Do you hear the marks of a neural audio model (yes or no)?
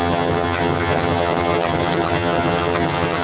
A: yes